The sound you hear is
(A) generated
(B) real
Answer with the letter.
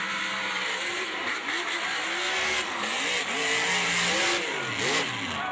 B